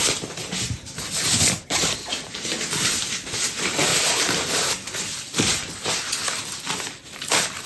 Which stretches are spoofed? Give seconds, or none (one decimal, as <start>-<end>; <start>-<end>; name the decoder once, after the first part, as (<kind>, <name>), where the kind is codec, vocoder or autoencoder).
none